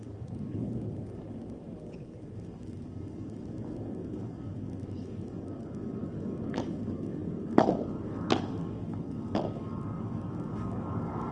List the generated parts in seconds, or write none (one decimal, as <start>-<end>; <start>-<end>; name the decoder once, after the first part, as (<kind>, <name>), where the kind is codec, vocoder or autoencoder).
0.0-11.3 (codec, DAC)